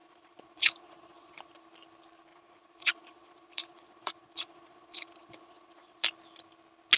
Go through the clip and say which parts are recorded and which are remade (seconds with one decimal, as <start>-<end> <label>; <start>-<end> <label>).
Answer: 0.0-1.6 remade; 1.6-2.3 recorded; 2.3-6.0 remade; 6.0-7.0 recorded